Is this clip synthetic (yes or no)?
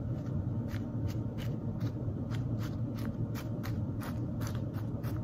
yes